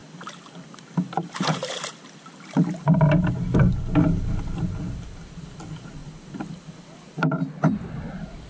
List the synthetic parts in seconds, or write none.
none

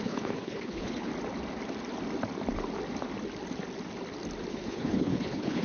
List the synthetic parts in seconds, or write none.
0.0-1.1 (codec, HILCodec); 4.5-5.6

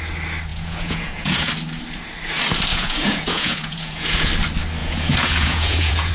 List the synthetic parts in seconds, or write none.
0.5-1.5 (vocoder, Vocos); 2.7-4.3; 4.8-6.1